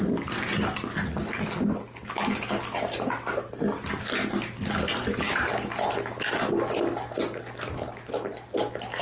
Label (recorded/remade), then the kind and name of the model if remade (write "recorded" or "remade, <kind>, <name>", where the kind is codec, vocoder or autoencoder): recorded